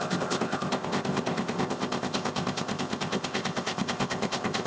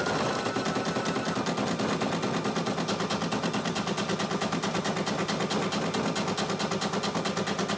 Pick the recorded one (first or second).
second